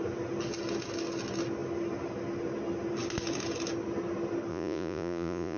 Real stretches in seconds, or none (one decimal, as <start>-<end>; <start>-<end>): 0.0-4.5